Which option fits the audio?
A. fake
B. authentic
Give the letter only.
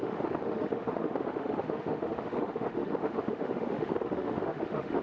A